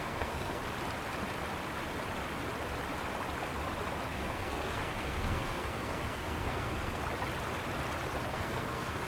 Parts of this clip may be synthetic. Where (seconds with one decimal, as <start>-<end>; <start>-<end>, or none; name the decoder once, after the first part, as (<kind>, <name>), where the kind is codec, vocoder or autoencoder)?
0.0-0.6 (codec, SNAC); 4.1-7.0; 8.3-9.1